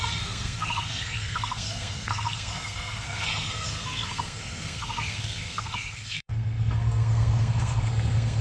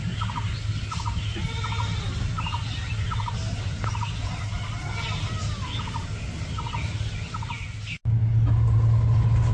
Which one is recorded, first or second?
second